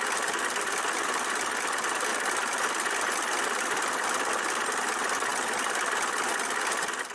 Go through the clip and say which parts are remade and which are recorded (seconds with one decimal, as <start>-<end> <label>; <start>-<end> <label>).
0.0-7.1 recorded